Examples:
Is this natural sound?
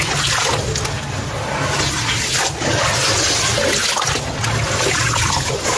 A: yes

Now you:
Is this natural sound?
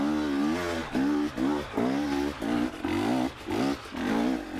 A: yes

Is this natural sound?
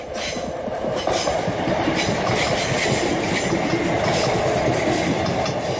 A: yes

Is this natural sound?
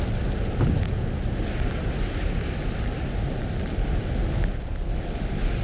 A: yes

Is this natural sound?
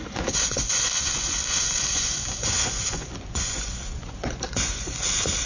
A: no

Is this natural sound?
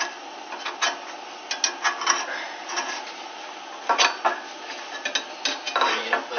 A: yes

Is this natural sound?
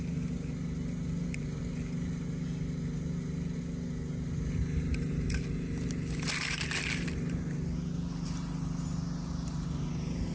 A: yes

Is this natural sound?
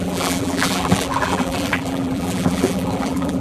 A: no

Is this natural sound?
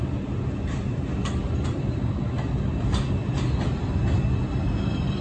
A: yes